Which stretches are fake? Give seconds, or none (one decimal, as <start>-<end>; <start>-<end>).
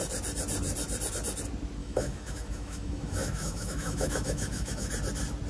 1.8-4.9